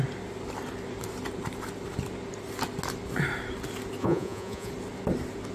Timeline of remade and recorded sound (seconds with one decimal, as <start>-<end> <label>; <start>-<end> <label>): 0.0-4.0 recorded; 4.0-4.7 remade; 4.7-5.5 recorded